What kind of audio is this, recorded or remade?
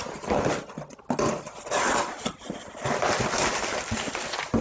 recorded